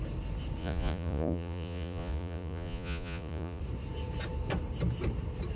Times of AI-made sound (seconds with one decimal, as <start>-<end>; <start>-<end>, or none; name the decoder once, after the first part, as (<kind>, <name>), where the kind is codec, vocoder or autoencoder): 0.6-3.6 (vocoder, Vocos)